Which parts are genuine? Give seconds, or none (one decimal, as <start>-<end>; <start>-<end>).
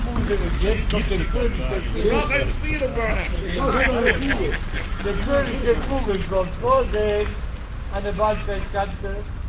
0.0-2.9; 3.6-9.5